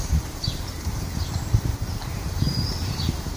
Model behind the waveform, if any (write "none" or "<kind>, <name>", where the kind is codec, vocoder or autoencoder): vocoder, BigVGAN v2